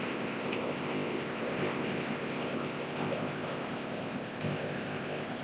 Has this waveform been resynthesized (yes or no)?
yes